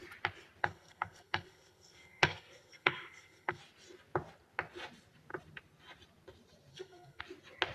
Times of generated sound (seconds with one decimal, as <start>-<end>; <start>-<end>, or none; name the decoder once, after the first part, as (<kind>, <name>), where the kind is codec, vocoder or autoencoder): 0.6-3.6 (codec, SNAC); 6.7-7.2